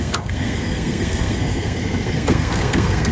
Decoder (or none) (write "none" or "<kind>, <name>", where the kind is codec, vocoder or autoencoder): codec, SNAC